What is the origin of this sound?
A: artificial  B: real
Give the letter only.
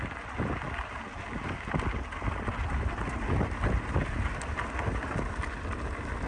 B